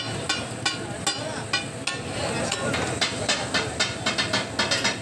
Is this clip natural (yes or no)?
yes